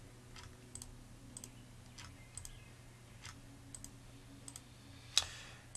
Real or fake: real